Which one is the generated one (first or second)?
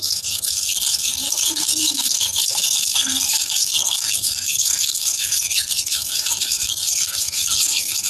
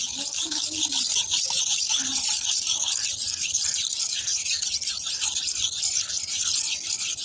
first